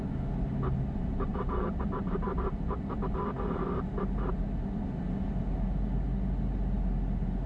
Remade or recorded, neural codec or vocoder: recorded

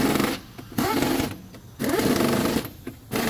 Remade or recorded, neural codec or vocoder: recorded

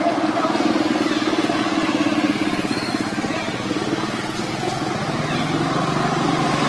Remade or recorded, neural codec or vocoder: recorded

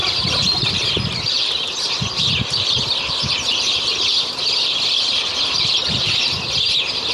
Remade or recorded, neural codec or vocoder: remade, vocoder, BigVGAN v2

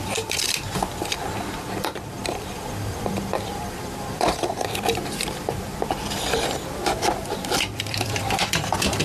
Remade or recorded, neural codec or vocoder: remade, vocoder, BigVGAN v2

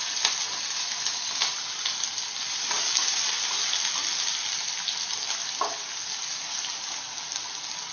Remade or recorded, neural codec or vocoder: recorded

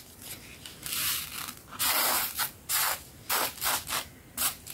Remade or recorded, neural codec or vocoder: recorded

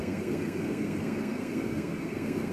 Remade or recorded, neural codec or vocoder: remade, codec, SNAC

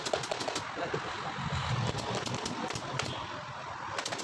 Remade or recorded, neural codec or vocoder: recorded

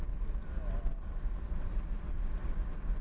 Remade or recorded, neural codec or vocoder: recorded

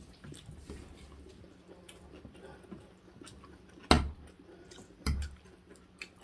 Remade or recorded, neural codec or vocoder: recorded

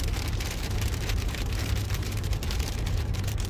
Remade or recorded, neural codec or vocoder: remade, vocoder, BigVGAN v2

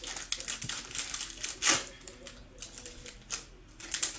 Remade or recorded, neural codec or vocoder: recorded